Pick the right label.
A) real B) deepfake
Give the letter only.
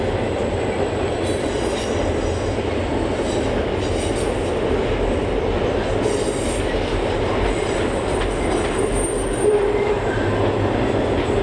A